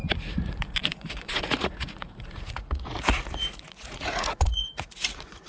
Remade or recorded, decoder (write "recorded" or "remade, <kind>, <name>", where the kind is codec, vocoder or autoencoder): remade, vocoder, Vocos